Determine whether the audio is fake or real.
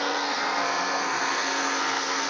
fake